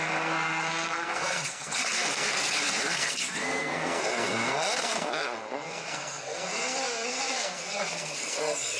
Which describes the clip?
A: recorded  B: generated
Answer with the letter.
B